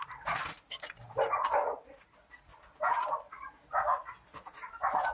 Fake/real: real